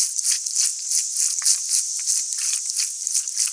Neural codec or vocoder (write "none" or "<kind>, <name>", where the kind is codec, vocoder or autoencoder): none